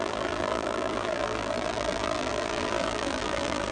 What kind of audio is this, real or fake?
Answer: fake